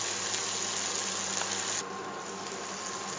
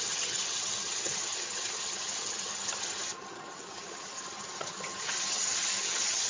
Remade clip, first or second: second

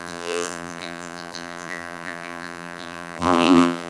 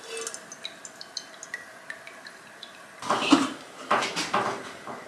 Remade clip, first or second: first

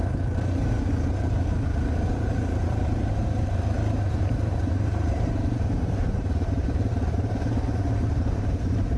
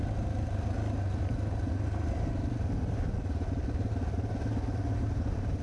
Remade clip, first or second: first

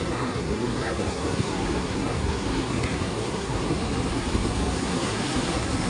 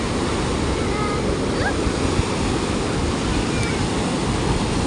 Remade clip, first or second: first